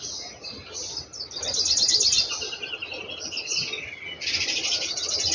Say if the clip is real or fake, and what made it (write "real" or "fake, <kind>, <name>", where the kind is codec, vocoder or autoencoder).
real